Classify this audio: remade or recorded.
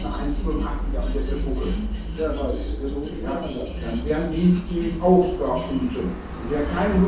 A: recorded